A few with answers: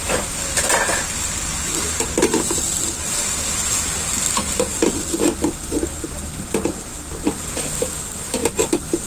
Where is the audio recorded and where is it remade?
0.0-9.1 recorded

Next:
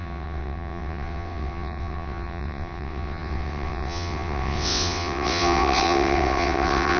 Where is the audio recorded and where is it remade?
0.0-7.0 remade

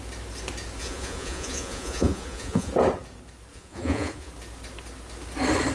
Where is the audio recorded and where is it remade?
0.0-0.8 recorded; 0.8-2.7 remade; 2.7-3.5 recorded; 3.5-4.3 remade; 4.3-5.7 recorded

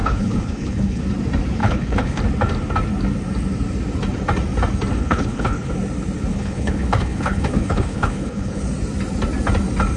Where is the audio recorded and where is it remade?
0.0-1.0 remade; 1.0-1.6 recorded; 1.6-2.2 remade; 2.2-5.0 recorded; 5.0-5.7 remade; 5.7-6.3 recorded; 6.3-8.6 remade; 8.6-10.0 recorded

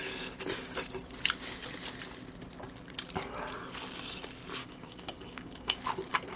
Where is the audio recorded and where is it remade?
0.0-4.6 recorded; 4.6-5.8 remade; 5.8-6.4 recorded

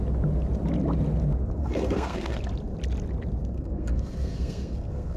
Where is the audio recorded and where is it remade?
0.0-1.6 recorded; 1.6-2.4 remade; 2.4-3.4 recorded; 3.4-5.2 remade

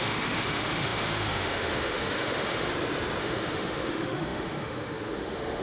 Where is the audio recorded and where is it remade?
0.0-2.7 remade; 2.7-3.2 recorded; 3.2-5.6 remade